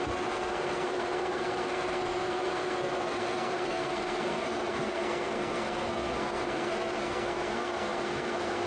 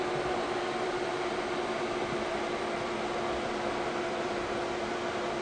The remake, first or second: first